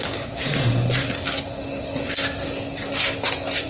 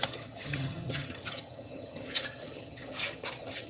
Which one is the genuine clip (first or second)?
first